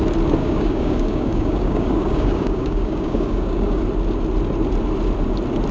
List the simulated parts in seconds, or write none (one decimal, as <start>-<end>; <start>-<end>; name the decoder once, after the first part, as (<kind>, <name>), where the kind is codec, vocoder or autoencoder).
0.4-3.8 (codec, DAC)